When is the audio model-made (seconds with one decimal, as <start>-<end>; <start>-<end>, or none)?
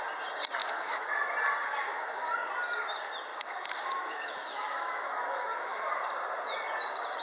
0.6-1.1; 1.9-2.5; 3.3-5.9